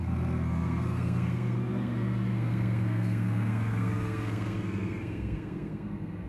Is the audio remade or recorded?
remade